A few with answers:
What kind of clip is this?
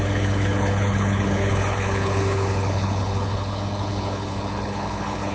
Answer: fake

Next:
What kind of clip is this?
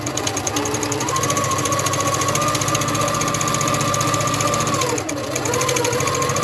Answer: real